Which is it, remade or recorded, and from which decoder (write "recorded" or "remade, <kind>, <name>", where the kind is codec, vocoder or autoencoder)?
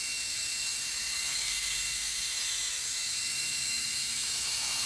remade, autoencoder, DAC-VAE